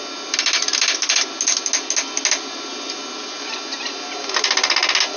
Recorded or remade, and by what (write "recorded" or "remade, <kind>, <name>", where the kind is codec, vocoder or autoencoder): recorded